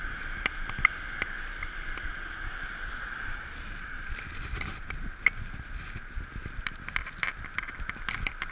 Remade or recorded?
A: recorded